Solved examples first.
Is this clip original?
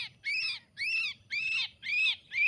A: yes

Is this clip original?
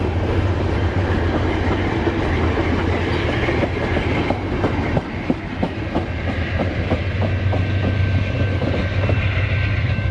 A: yes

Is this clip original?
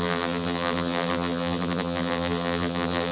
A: no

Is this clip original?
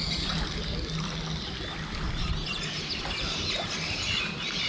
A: yes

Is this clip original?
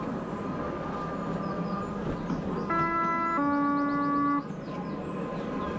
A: yes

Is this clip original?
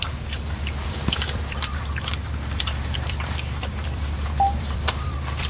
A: no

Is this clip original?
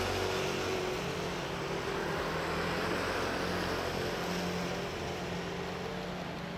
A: yes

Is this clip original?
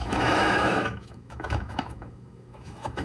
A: no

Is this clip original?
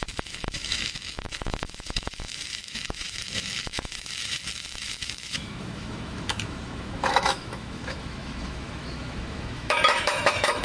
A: no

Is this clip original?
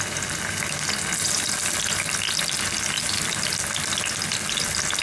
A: yes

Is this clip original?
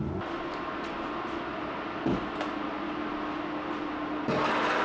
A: yes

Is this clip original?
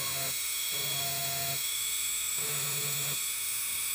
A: no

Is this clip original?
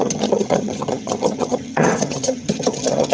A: no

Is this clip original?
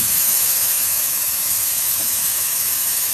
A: no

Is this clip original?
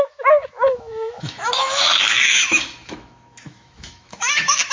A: no